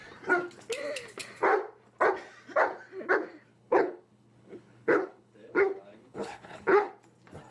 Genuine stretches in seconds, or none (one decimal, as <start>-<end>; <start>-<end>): 0.0-3.5; 6.9-7.5

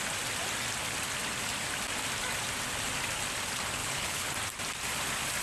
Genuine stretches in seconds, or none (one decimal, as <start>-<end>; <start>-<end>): 0.0-3.8; 4.3-5.4